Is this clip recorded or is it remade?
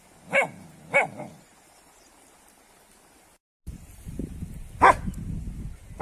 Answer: recorded